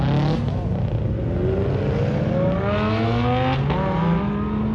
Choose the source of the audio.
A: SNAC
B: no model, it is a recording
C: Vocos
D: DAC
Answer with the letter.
B